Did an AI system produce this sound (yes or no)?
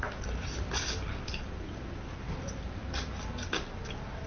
no